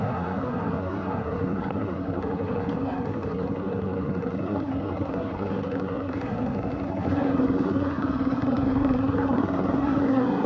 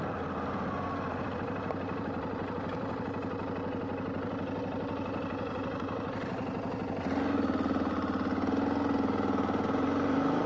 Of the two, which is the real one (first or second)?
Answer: second